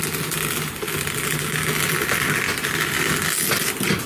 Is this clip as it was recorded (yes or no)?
yes